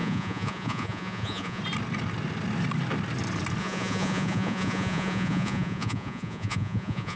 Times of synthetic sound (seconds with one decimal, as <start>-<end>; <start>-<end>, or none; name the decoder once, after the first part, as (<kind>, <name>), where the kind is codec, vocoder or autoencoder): 0.0-1.6 (vocoder, Vocos); 3.6-7.2